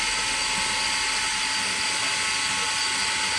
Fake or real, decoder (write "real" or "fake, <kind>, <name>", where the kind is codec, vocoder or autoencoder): real